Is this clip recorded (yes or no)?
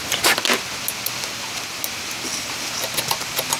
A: yes